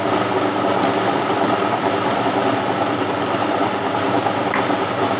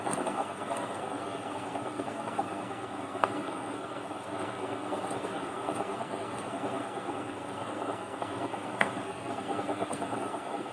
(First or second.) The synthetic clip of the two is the second